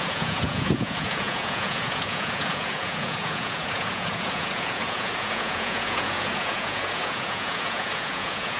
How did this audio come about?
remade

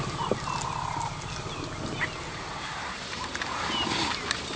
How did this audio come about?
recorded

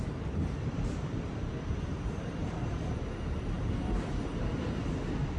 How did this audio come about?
remade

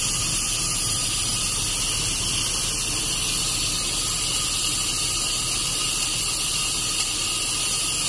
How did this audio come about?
recorded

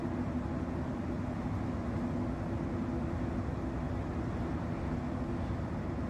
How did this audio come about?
recorded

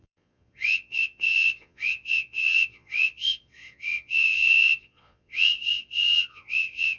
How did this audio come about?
remade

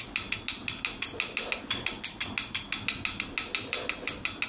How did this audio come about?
recorded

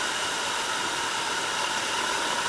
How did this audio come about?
recorded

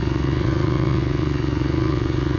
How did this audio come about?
remade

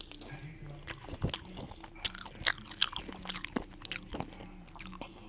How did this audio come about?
recorded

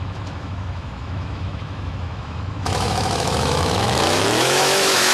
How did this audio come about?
remade